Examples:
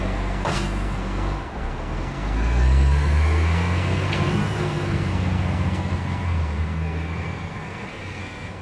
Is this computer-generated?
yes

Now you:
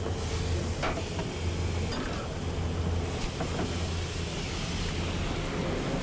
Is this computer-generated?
no